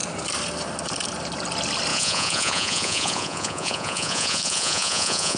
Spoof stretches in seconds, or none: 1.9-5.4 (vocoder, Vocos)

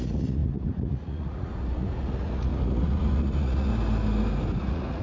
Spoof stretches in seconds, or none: 0.0-3.7 (vocoder, Vocos); 4.6-5.0

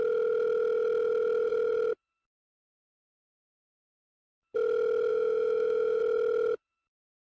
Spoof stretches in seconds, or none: 5.1-6.0 (autoencoder, DAC-VAE)

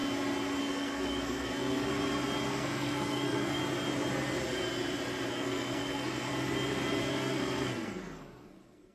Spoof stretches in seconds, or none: 0.6-1.9 (codec, SNAC); 2.5-3.6; 5.3-6.3; 7.0-8.9

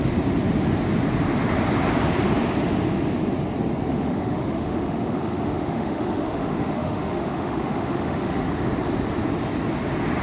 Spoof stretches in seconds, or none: 3.9-8.6 (autoencoder, DAC-VAE)

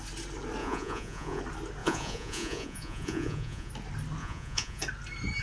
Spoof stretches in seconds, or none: 0.6-1.4 (vocoder, Vocos); 1.8-3.7; 4.2-4.8

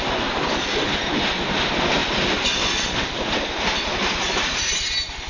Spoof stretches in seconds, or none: none